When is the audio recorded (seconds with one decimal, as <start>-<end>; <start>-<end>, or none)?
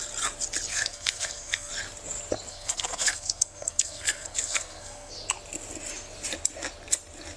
0.0-0.7; 1.7-2.5; 5.1-7.4